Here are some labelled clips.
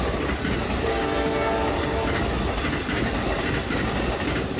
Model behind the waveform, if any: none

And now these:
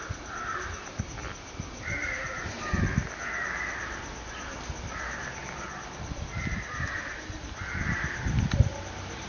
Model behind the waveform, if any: none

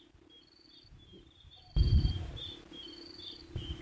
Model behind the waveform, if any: vocoder, BigVGAN v2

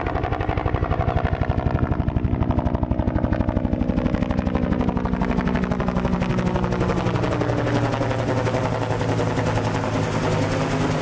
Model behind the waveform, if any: none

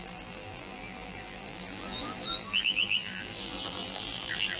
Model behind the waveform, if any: vocoder, BigVGAN v2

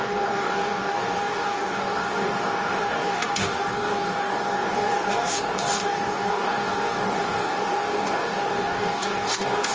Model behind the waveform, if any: codec, DAC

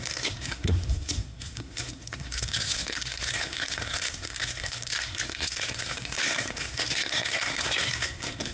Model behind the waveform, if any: codec, SNAC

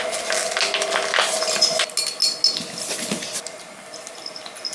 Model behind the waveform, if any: none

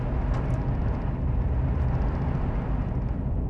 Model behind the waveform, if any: none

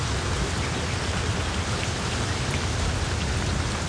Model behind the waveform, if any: none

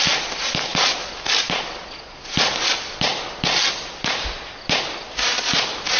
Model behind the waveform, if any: none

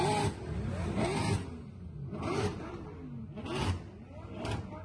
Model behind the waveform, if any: none